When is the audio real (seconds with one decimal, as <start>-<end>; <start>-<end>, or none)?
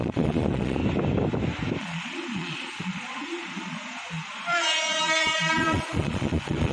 0.8-1.8